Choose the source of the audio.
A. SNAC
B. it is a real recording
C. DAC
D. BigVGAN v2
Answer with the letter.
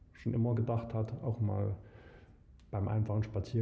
B